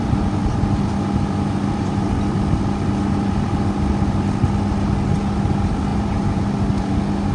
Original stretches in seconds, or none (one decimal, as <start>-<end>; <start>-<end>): 0.0-5.9; 6.4-7.3